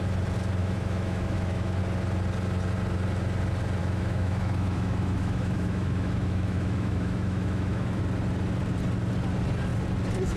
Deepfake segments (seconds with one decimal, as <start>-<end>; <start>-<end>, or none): 0.6-1.8; 3.8-8.0